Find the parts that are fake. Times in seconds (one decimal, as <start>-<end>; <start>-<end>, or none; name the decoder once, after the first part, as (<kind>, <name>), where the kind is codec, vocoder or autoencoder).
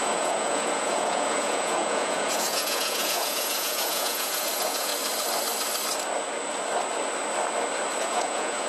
0.0-4.9 (vocoder, Vocos); 8.0-8.7